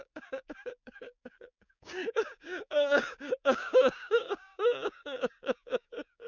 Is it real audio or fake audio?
fake